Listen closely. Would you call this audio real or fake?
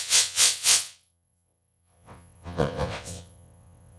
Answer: fake